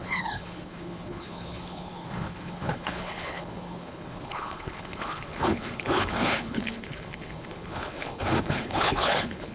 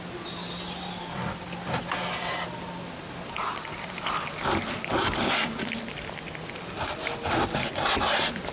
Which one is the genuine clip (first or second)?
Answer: second